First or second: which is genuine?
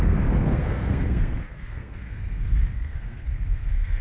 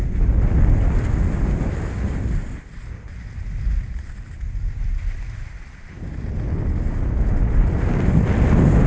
second